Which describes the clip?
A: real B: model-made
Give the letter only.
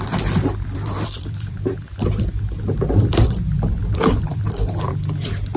B